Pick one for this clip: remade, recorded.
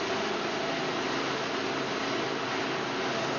recorded